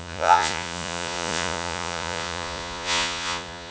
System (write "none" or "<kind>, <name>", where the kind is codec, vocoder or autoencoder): vocoder, Vocos